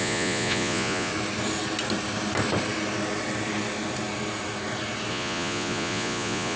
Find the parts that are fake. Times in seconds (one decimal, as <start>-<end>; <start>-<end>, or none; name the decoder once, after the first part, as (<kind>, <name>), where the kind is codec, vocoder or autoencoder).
0.0-1.1 (vocoder, Vocos); 5.1-6.6